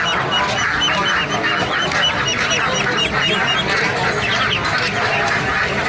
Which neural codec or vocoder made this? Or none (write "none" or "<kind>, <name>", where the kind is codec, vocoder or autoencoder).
none